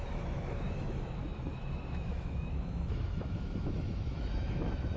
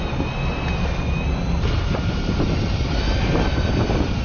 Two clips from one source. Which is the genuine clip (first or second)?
second